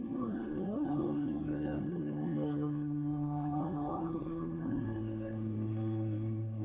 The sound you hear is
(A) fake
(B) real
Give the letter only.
A